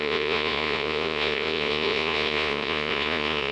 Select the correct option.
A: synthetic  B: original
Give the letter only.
A